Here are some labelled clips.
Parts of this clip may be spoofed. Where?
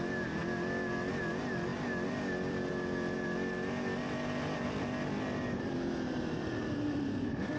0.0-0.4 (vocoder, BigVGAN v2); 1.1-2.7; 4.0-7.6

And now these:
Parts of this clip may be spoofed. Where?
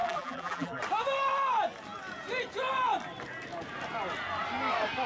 0.0-0.8 (vocoder, BigVGAN v2)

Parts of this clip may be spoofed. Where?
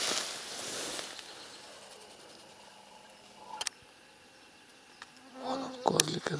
none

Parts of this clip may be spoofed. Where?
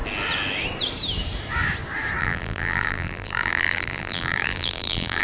2.2-5.2 (vocoder, BigVGAN v2)